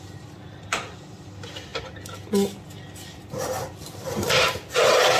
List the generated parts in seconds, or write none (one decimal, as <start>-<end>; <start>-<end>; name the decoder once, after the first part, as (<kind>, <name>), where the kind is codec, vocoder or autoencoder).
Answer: 0.0-1.7 (vocoder, BigVGAN v2); 3.7-5.2